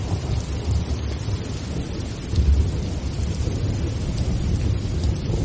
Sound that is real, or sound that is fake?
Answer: real